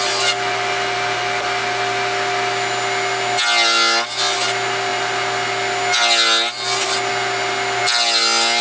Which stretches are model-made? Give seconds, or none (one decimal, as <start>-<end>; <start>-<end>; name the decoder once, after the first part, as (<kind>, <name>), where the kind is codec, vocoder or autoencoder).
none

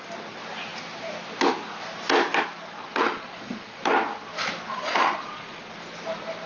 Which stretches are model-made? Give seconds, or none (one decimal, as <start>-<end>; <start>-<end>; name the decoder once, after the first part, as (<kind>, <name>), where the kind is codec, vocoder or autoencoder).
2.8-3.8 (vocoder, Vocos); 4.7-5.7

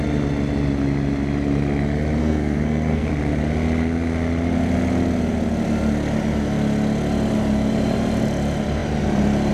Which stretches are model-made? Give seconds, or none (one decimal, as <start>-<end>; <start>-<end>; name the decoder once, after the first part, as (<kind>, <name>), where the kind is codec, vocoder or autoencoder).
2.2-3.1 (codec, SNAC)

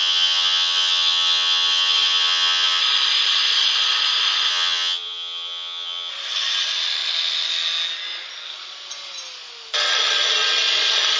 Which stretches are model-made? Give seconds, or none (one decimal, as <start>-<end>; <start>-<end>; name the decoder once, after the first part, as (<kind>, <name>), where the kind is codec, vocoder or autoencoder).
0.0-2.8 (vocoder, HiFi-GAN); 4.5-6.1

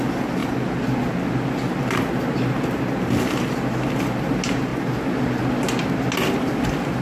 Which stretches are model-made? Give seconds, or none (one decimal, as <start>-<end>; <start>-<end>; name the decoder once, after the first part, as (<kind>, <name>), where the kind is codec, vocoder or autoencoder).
none

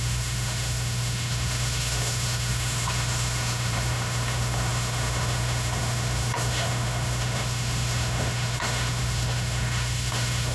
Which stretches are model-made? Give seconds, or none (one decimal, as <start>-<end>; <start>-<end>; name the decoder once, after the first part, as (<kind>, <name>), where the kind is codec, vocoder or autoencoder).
0.0-10.5 (autoencoder, DAC-VAE)